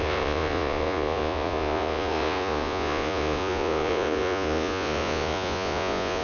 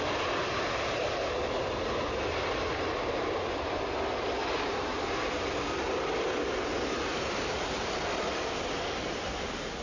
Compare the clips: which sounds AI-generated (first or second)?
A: first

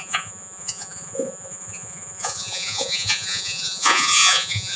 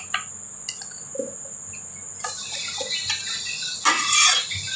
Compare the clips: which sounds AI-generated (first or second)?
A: first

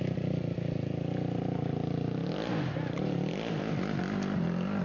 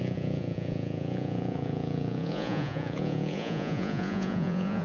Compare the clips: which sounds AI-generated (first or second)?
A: second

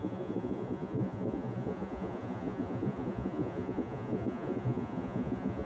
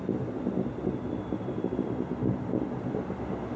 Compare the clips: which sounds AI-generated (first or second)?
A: first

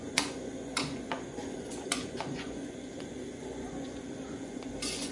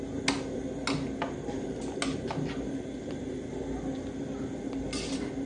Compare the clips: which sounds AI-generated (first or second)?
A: first